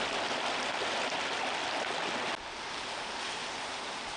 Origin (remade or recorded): recorded